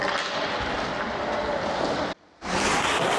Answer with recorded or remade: recorded